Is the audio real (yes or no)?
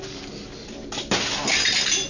yes